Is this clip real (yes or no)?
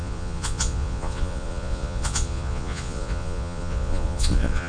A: no